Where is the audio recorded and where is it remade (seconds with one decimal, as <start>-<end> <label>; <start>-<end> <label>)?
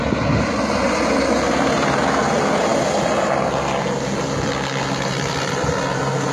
0.0-6.3 recorded